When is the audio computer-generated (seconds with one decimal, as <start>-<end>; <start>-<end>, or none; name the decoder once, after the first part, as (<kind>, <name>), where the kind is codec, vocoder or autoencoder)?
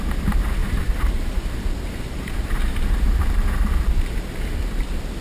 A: 0.6-3.7 (vocoder, BigVGAN v2)